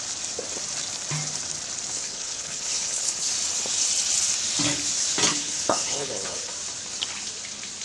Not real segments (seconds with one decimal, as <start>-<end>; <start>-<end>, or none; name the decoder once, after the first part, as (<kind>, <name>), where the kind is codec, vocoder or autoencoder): 1.9-3.3 (codec, HILCodec); 5.3-6.5